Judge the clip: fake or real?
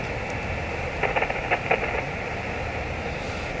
real